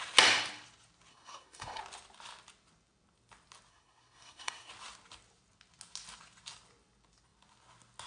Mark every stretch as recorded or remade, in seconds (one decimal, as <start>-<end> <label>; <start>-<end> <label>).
0.0-1.1 recorded; 1.1-1.8 remade; 1.8-3.7 recorded; 3.7-4.7 remade; 4.7-8.1 recorded